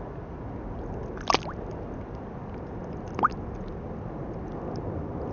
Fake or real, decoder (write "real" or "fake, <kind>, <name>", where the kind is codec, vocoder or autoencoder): real